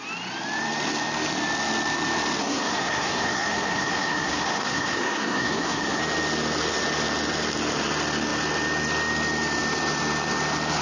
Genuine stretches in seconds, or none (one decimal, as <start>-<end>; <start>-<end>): 0.0-2.4; 6.0-10.8